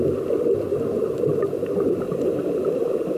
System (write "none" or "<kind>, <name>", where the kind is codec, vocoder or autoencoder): vocoder, BigVGAN v2